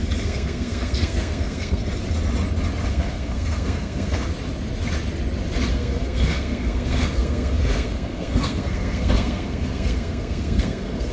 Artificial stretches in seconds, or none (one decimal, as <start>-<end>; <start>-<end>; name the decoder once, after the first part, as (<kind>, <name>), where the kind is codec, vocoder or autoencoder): 0.0-1.8 (codec, SNAC); 2.9-4.3; 5.7-11.1